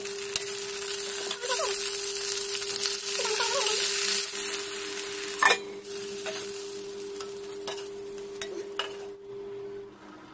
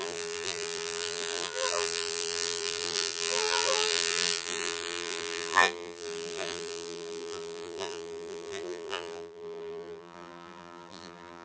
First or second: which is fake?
second